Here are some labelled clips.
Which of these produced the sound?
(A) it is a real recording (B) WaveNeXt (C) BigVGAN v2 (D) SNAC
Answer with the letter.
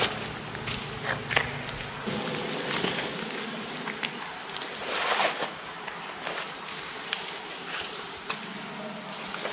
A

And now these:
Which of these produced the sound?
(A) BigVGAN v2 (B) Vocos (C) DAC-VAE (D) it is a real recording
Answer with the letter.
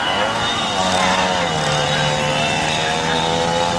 D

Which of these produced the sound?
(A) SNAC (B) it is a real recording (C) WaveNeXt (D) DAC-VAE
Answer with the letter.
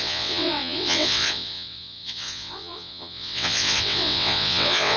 C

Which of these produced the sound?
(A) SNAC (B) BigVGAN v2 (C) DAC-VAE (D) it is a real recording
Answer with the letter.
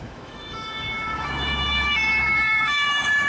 C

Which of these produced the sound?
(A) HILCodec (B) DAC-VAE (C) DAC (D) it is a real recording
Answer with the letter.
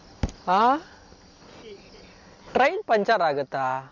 D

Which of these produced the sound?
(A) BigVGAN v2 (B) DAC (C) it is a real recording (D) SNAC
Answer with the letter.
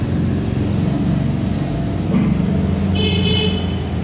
C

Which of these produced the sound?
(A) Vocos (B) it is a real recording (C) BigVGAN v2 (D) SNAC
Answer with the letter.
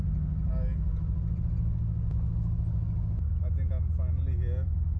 B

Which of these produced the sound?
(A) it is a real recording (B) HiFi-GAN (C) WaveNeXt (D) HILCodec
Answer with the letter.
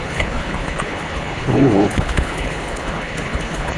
D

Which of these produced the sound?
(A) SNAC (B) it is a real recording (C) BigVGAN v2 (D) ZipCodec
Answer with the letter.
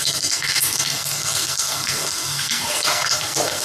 A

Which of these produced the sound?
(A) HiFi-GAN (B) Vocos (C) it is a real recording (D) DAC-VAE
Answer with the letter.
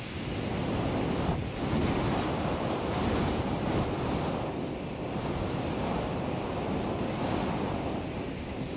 C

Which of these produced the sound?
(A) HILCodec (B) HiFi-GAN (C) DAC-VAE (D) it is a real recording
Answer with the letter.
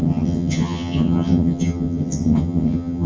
B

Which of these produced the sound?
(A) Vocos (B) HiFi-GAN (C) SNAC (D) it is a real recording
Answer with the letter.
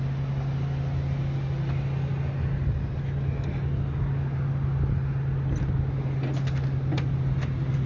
D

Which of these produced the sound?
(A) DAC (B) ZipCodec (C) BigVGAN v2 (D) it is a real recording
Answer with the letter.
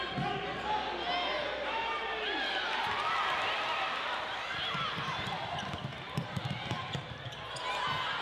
D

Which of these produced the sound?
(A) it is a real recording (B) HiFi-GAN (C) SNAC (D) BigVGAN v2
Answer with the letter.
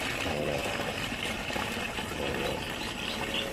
D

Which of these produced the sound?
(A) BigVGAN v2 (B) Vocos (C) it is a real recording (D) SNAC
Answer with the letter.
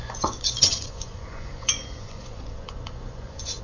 B